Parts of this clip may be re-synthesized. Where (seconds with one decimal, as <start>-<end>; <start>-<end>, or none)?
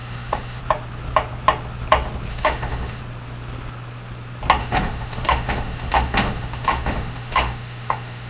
0.0-0.6; 2.3-3.0; 4.6-8.3